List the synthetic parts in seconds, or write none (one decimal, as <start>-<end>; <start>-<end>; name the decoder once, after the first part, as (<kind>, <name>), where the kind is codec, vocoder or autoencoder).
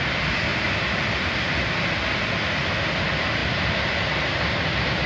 0.5-1.7 (vocoder, BigVGAN v2)